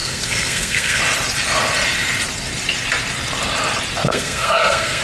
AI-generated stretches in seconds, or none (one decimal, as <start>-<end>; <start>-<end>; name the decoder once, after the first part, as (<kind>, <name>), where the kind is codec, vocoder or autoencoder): 0.0-1.0 (codec, SNAC); 4.1-5.0